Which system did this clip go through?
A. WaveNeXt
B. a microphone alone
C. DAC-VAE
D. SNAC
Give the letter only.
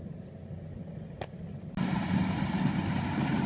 B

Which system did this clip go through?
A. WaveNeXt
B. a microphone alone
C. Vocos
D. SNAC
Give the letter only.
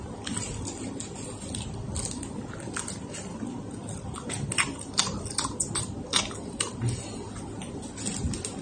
B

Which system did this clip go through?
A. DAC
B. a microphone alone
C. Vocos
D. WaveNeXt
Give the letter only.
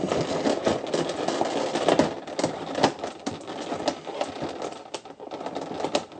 B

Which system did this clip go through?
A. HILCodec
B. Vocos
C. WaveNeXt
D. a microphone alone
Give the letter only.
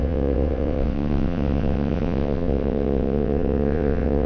C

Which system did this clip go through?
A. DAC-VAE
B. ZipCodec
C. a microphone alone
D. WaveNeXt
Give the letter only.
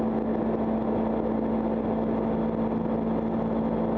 C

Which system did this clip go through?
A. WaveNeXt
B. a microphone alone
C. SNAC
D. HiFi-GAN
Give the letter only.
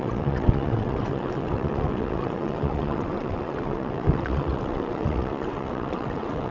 A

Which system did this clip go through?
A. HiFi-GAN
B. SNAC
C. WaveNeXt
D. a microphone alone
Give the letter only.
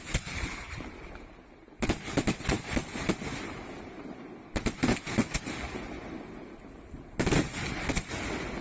D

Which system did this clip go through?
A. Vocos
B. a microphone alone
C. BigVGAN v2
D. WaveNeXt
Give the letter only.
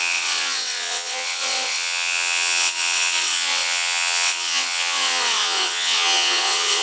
D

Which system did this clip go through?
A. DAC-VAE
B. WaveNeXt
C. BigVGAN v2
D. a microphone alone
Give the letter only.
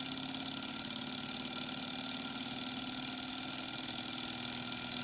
D